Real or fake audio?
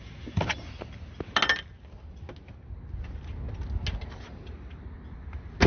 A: real